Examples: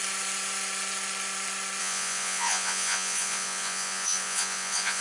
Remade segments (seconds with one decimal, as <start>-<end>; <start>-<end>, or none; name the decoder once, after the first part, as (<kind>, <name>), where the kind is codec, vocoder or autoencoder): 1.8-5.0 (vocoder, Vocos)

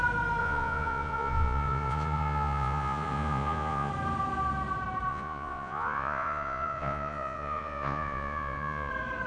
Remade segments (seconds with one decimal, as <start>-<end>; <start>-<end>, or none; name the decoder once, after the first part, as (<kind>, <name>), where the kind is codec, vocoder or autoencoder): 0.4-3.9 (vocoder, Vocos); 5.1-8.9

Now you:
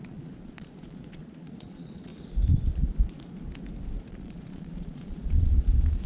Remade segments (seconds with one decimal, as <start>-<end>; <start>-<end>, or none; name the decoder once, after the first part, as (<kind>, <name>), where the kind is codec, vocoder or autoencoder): 0.0-2.1 (vocoder, Vocos); 4.1-6.1

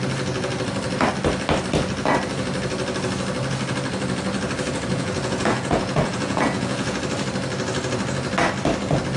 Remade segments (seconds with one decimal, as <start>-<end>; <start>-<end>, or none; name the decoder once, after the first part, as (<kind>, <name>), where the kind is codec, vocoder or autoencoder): 4.9-7.0 (vocoder, Vocos)

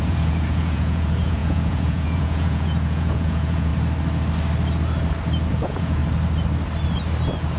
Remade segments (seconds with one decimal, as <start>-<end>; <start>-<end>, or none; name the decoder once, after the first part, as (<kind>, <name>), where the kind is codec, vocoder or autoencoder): 0.0-3.7 (vocoder, Vocos); 5.5-6.0